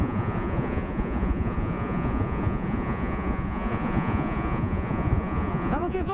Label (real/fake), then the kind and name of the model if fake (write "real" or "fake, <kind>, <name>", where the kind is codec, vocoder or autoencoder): fake, vocoder, Vocos